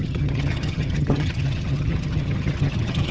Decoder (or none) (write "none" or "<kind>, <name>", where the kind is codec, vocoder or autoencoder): vocoder, HiFi-GAN